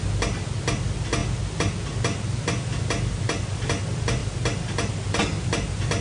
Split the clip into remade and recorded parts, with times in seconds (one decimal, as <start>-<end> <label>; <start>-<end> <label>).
0.0-6.0 recorded